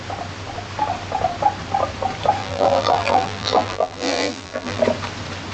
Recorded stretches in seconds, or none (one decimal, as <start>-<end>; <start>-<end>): 0.0-2.4; 4.8-5.5